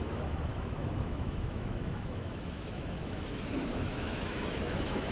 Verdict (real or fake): fake